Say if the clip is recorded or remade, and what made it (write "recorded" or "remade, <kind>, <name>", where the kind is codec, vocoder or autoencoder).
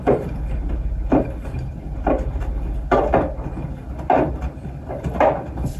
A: recorded